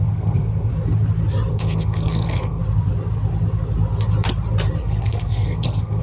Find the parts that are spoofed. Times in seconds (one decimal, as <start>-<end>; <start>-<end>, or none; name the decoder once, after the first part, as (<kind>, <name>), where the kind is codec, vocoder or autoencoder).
0.0-0.7 (codec, SNAC); 1.5-2.6; 4.8-6.0